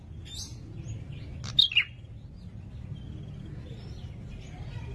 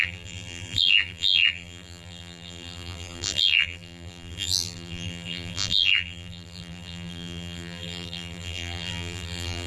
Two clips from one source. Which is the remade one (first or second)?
second